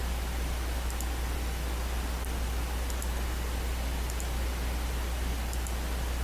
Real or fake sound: real